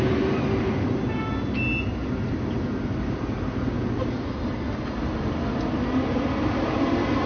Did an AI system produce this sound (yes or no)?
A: no